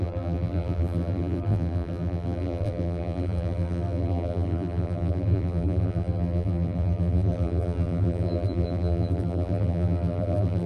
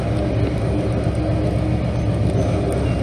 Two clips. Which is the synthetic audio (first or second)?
first